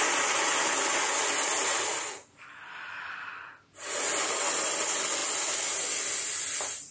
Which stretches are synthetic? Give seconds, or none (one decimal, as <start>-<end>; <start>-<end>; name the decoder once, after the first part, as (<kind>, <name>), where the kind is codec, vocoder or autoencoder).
none

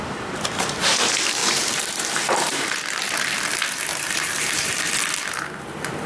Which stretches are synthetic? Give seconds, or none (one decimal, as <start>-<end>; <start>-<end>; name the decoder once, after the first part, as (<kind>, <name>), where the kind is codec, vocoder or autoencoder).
1.4-2.8 (vocoder, BigVGAN v2); 3.9-4.9

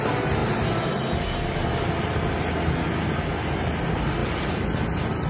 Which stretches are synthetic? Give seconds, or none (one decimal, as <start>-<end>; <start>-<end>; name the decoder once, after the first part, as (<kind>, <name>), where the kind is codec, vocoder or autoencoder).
none

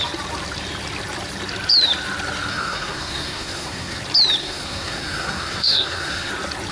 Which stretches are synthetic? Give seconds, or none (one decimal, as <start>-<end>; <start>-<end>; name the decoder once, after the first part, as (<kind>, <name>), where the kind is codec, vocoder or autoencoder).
2.5-4.0 (codec, SNAC); 4.4-6.3

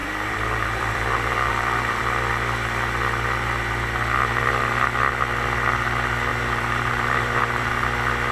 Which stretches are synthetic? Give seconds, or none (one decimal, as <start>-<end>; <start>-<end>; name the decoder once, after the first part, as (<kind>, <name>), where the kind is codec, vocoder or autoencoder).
0.0-2.0 (vocoder, BigVGAN v2); 6.3-7.7

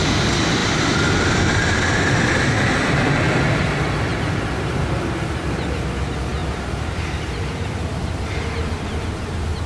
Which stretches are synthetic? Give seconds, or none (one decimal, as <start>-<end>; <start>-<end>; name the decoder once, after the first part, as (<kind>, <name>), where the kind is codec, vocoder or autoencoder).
none

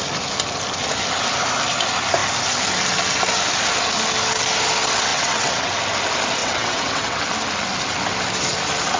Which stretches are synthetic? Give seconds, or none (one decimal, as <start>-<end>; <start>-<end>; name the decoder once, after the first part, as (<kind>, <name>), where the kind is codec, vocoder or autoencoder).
5.1-5.7 (vocoder, WaveNeXt); 6.4-7.2